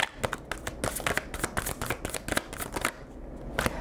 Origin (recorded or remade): recorded